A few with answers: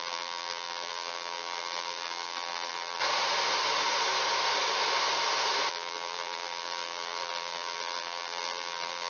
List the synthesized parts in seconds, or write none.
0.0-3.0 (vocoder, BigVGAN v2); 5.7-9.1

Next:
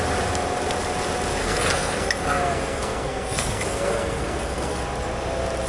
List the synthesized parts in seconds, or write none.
1.4-4.8 (codec, SNAC)

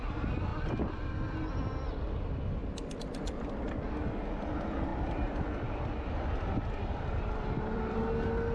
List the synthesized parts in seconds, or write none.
0.5-1.1 (vocoder, BigVGAN v2); 4.9-8.1

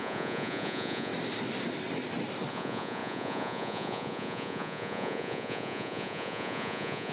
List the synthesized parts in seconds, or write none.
0.0-1.1 (vocoder, Vocos); 2.5-7.1